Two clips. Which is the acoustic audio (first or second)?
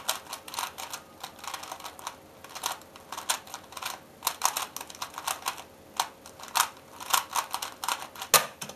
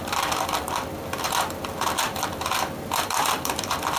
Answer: first